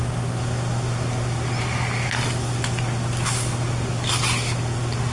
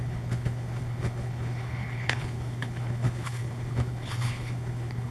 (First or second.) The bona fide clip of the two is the first